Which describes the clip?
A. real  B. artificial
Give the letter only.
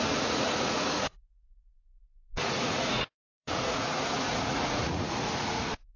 B